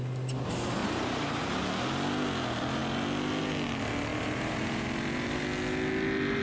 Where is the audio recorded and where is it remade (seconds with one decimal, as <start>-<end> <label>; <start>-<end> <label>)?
0.0-0.8 recorded; 0.8-1.4 remade; 1.4-4.1 recorded; 4.1-5.4 remade; 5.4-6.4 recorded